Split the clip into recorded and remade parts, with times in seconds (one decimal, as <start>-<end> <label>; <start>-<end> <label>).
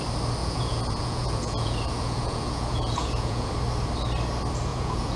0.0-0.4 recorded; 0.4-3.5 remade; 3.5-4.7 recorded; 4.7-5.2 remade